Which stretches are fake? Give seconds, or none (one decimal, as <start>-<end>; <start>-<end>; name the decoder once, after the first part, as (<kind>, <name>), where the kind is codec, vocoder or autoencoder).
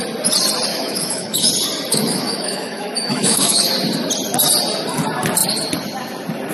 0.7-1.5 (autoencoder, DAC-VAE); 1.9-3.7